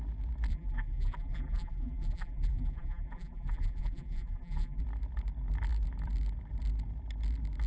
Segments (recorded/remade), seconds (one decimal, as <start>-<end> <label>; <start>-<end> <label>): 0.0-0.5 recorded; 0.5-4.8 remade; 4.8-7.7 recorded